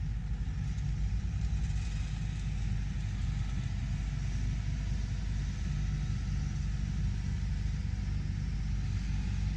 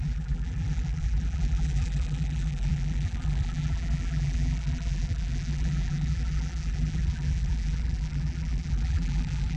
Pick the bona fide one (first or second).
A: first